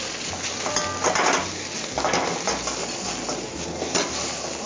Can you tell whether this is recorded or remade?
recorded